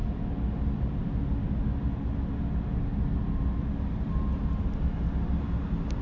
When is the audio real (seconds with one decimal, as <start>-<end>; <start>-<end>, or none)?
0.0-6.0